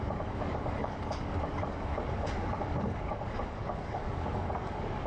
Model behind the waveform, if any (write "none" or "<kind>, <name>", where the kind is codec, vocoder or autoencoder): codec, DAC